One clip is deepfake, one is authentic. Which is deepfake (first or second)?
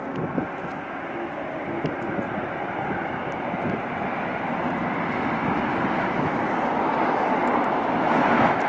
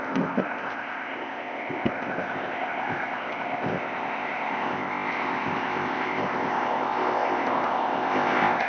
second